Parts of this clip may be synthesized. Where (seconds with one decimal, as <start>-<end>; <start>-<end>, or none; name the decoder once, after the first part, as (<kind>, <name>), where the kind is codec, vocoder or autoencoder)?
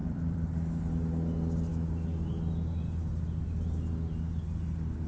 0.0-0.5 (vocoder, BigVGAN v2)